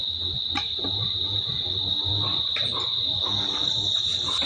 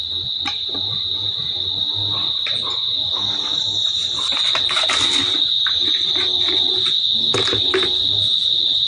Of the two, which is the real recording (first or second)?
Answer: second